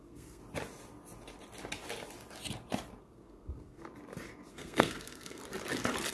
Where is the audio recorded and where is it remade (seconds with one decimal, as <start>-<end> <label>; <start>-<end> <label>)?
0.0-0.4 remade; 0.4-3.0 recorded; 3.0-3.8 remade; 3.8-4.5 recorded; 4.5-5.4 remade; 5.4-6.1 recorded